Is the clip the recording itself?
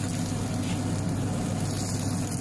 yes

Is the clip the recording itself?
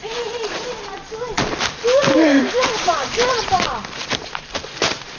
no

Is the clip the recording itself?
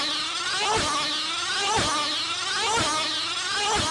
yes